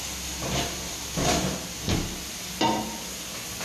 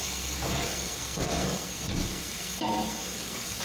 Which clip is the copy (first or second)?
second